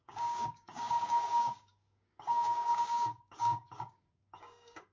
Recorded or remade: remade